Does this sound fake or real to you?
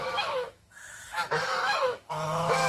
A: fake